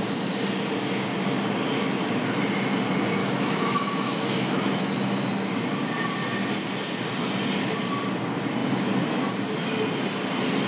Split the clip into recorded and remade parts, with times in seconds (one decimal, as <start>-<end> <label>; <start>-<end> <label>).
0.0-3.2 recorded; 3.2-4.9 remade; 4.9-10.7 recorded